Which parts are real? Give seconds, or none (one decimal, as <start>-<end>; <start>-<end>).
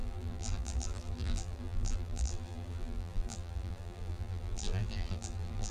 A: none